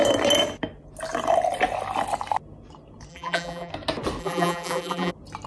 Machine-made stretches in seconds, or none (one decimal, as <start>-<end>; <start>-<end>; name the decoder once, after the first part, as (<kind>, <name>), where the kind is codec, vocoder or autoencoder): 3.1-3.7 (vocoder, BigVGAN v2); 4.2-5.1